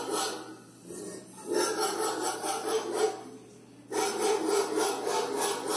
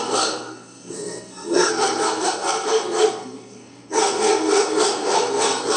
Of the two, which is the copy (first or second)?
second